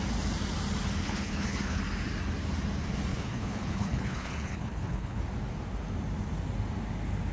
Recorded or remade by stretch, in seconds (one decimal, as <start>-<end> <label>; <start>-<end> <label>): 0.0-1.0 recorded; 1.0-1.8 remade; 1.8-3.1 recorded; 3.1-5.2 remade; 5.2-7.3 recorded